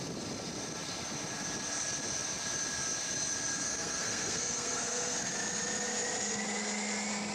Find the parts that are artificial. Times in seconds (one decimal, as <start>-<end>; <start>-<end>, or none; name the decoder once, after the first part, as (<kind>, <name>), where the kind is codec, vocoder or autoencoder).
3.5-5.3 (codec, SNAC)